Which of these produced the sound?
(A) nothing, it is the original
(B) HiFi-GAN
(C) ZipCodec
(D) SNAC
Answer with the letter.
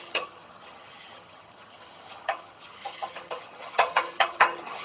B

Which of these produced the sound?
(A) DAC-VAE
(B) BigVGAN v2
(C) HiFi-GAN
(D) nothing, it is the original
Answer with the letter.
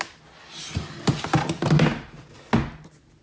D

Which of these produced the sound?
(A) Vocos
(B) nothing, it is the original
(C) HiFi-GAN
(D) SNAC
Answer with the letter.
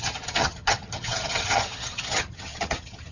C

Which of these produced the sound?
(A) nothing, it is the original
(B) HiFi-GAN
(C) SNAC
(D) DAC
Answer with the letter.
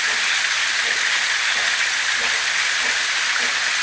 A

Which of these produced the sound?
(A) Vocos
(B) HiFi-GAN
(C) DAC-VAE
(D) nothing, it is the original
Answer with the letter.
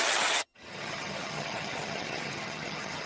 B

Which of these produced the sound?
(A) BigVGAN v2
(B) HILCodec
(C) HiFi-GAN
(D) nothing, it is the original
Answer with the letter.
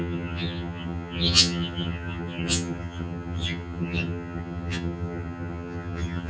C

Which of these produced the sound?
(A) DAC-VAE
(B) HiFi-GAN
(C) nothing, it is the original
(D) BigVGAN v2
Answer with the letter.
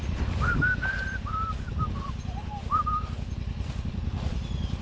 C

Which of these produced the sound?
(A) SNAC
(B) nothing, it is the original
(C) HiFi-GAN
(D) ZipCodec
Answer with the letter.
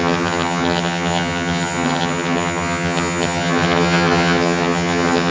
C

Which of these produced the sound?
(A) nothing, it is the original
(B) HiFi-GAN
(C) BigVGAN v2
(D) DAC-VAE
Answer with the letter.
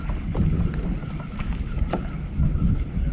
A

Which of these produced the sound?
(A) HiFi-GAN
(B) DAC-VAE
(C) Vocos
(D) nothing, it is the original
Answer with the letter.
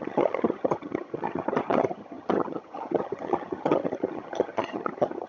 A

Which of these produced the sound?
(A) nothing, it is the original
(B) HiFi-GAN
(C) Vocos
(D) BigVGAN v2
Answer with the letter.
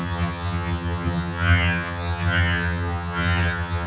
B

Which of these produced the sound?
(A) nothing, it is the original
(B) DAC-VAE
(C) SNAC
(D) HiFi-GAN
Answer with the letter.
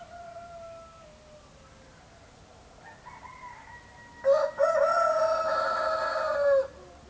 A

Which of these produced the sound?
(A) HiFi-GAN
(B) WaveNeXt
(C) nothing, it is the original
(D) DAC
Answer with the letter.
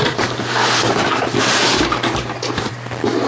C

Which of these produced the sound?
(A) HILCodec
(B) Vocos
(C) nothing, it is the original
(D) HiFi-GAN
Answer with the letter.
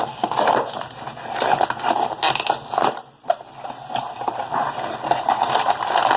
C